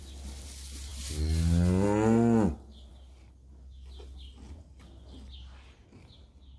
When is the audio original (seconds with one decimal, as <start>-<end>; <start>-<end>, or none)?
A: 0.0-6.6